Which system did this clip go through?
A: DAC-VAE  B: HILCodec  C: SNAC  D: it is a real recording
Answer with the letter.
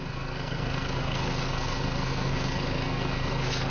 C